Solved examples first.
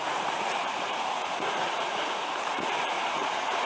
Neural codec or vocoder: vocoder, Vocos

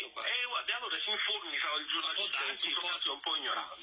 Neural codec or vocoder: none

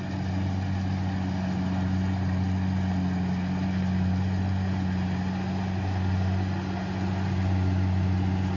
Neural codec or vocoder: none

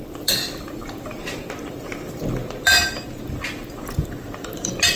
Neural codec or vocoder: none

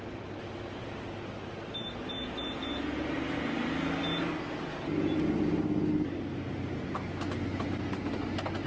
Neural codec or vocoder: none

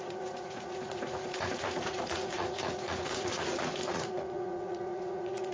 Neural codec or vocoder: vocoder, Vocos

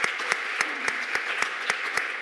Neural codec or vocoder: vocoder, Vocos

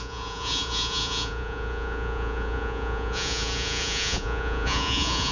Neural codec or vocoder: vocoder, Vocos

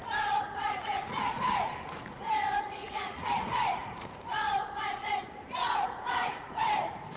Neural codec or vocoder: vocoder, Vocos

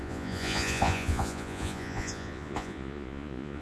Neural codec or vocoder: vocoder, Vocos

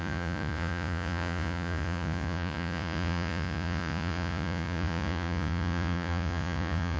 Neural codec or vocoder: vocoder, Vocos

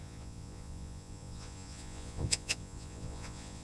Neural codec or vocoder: vocoder, Vocos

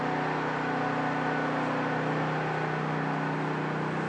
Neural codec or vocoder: none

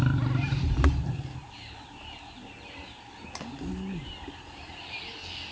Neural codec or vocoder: none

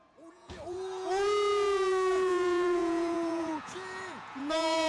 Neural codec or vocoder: vocoder, Vocos